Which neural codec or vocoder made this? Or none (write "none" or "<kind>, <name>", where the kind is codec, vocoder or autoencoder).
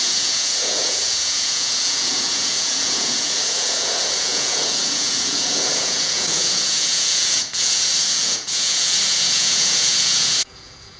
vocoder, Vocos